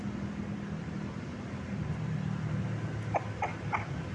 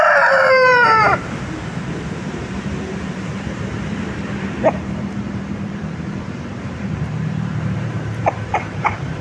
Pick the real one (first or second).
first